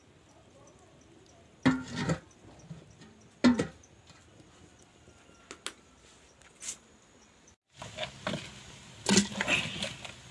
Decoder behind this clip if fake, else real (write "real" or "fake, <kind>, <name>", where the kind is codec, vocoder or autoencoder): real